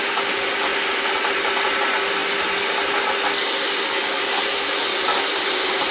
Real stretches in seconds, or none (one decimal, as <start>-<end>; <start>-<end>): 0.0-5.9